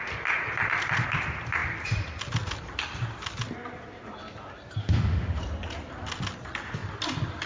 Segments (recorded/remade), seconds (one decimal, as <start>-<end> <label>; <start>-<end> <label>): 0.0-4.8 recorded; 4.8-5.4 remade; 5.4-7.5 recorded